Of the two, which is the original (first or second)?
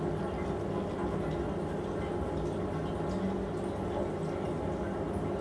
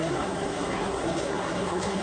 first